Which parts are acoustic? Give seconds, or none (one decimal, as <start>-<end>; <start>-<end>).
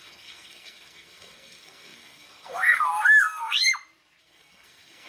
3.7-4.2